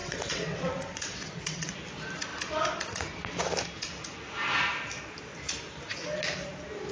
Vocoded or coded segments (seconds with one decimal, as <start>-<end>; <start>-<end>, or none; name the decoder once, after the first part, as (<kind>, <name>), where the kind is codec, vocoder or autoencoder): 0.0-1.7 (vocoder, WaveNeXt)